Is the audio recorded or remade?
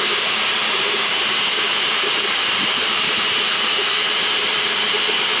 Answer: remade